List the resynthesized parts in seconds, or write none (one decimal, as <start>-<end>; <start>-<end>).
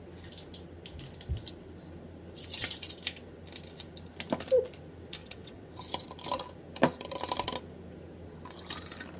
5.2-5.7